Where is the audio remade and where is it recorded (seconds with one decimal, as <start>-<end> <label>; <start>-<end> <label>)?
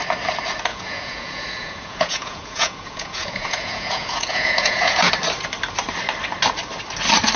0.0-0.7 recorded; 0.7-5.1 remade; 5.1-7.4 recorded